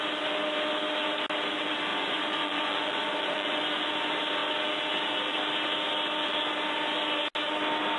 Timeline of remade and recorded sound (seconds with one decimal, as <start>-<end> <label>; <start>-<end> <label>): 0.0-1.9 recorded; 1.9-3.6 remade; 3.6-8.0 recorded